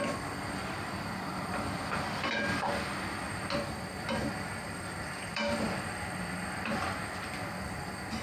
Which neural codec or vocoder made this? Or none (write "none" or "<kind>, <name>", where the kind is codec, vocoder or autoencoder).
vocoder, BigVGAN v2